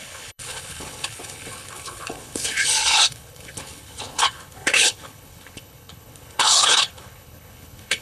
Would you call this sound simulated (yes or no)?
yes